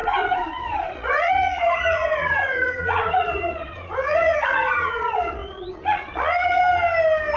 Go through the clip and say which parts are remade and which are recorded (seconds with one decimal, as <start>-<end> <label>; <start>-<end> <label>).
0.0-6.6 remade; 6.6-7.4 recorded